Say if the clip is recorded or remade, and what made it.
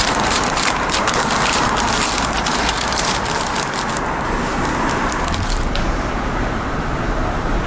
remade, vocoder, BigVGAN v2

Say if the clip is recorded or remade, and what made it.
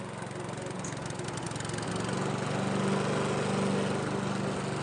recorded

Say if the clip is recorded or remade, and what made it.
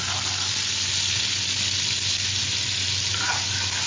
recorded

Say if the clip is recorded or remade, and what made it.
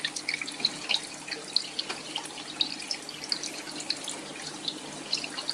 recorded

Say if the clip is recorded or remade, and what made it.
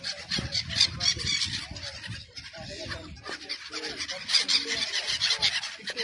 recorded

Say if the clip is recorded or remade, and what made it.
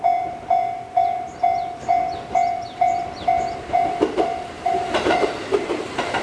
remade, vocoder, BigVGAN v2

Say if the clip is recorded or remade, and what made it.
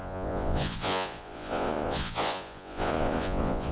remade, vocoder, Vocos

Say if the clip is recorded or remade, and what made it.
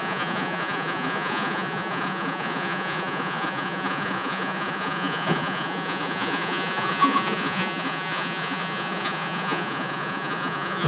remade, vocoder, Vocos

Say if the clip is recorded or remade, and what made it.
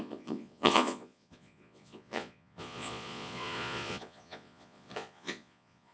remade, vocoder, Vocos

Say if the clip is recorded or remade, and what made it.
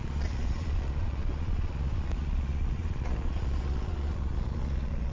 remade, vocoder, Vocos